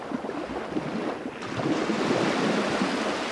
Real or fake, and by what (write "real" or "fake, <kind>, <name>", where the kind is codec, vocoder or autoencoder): real